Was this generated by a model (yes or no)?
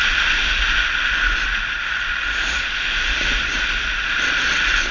no